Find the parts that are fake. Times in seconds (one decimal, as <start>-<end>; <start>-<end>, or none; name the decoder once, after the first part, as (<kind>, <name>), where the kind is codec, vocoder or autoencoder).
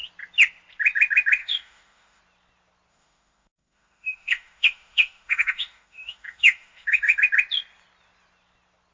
1.4-2.2 (autoencoder, DAC-VAE); 2.9-7.2